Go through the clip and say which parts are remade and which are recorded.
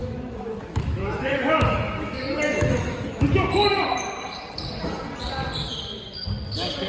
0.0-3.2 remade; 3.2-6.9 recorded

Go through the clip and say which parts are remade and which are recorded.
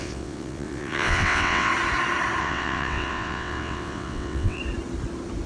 0.0-1.7 remade; 1.7-2.4 recorded; 2.4-4.6 remade; 4.6-5.5 recorded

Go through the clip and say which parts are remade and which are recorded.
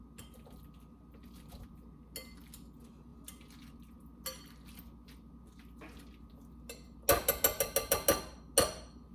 0.0-9.1 recorded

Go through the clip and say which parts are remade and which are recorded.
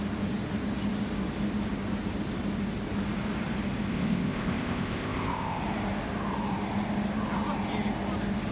0.0-3.9 recorded; 3.9-5.6 remade; 5.6-8.5 recorded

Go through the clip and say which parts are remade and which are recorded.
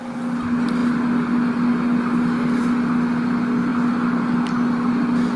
0.0-5.4 recorded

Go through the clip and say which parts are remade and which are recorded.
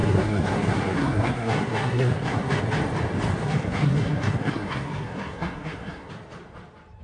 0.0-2.6 remade; 2.6-3.4 recorded; 3.4-6.1 remade; 6.1-7.0 recorded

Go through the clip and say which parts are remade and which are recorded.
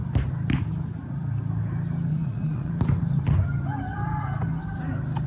0.0-2.1 recorded; 2.1-2.7 remade; 2.7-5.3 recorded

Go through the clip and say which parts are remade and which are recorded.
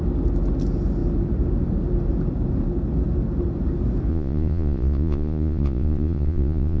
0.0-4.1 recorded; 4.1-6.8 remade